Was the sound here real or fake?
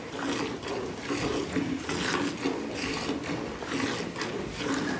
real